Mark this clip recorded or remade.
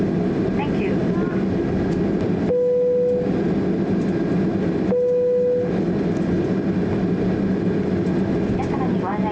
recorded